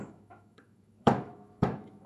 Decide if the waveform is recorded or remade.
remade